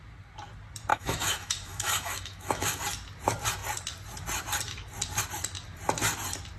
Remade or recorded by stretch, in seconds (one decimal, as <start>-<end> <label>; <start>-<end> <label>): 0.0-0.9 recorded; 0.9-2.8 remade; 2.8-6.6 recorded